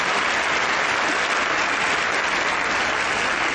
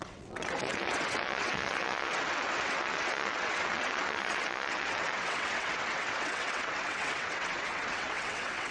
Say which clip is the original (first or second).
first